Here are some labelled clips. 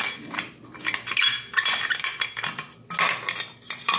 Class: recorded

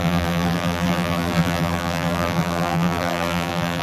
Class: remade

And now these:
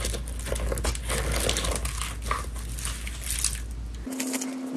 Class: recorded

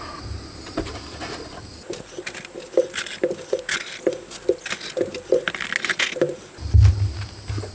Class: recorded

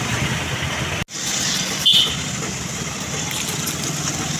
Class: recorded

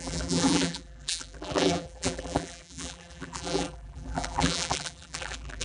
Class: remade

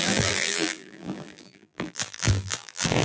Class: remade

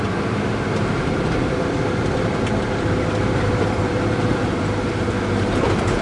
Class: remade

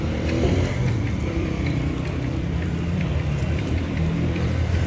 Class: remade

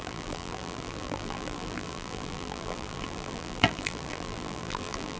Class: remade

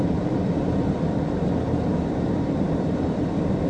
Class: remade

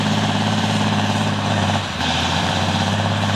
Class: remade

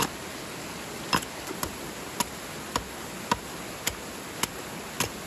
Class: recorded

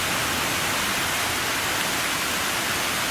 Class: recorded